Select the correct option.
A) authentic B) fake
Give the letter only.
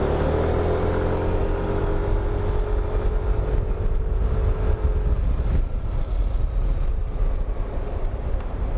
A